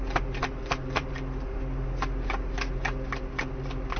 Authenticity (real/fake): real